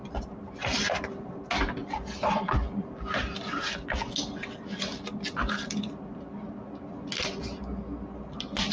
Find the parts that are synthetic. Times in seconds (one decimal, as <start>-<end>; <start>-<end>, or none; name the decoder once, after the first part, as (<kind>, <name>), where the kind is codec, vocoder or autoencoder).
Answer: none